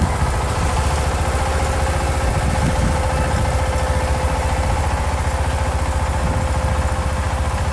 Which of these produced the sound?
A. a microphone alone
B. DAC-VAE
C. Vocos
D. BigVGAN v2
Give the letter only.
A